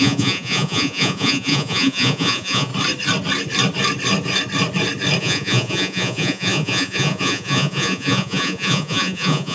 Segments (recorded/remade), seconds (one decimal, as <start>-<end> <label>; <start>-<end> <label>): 0.0-2.7 remade; 2.7-5.2 recorded; 5.2-9.5 remade